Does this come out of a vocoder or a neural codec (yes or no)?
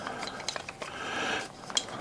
no